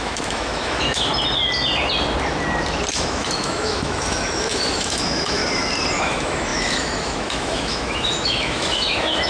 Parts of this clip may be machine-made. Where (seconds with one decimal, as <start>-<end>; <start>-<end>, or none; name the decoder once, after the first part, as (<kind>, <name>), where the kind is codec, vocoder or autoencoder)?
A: 0.0-1.1 (autoencoder, DAC-VAE); 2.9-5.4; 6.0-9.3